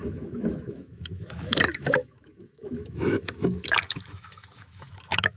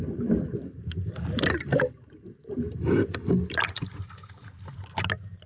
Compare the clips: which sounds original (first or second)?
second